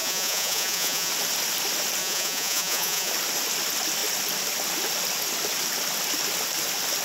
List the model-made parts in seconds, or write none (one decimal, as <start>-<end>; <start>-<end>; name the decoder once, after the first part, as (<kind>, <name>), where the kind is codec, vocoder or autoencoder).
0.0-1.1 (vocoder, Vocos); 2.0-3.1